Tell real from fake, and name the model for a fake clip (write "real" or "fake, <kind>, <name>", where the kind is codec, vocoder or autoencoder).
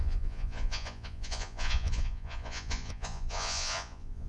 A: fake, vocoder, Vocos